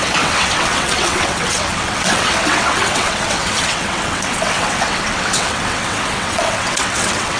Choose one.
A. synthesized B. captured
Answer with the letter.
A